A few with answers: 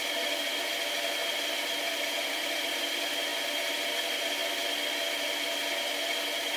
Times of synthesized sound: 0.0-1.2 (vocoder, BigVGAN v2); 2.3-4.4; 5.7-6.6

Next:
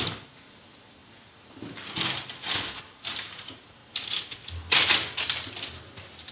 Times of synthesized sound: 0.0-1.0 (vocoder, BigVGAN v2); 2.8-3.8

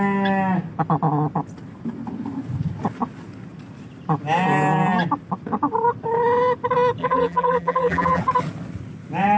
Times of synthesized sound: 7.0-8.2 (vocoder, BigVGAN v2)

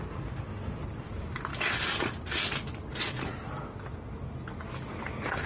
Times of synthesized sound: none

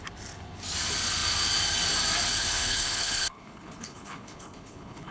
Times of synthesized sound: 2.4-5.1 (codec, HILCodec)

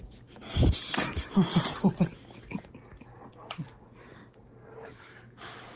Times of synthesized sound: 0.0-0.4 (autoencoder, DAC-VAE); 1.0-1.5; 4.8-5.8